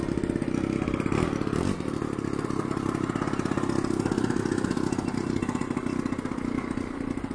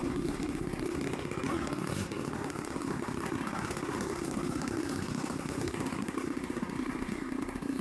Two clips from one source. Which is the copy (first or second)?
second